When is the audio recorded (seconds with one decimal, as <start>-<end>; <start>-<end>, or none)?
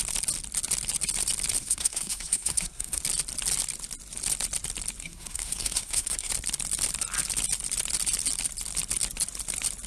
0.0-1.6; 3.0-5.0; 6.3-9.9